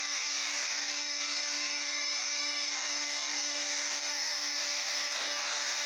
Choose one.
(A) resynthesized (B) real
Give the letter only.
A